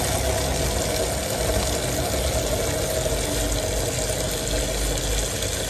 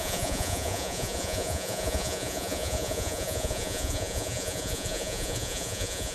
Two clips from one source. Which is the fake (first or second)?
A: second